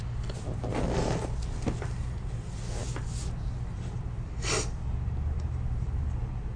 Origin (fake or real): real